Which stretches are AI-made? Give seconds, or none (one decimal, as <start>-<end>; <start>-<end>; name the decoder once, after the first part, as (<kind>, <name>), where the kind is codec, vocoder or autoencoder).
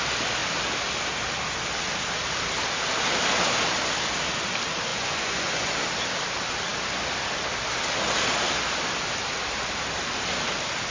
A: 4.9-5.8 (vocoder, Vocos)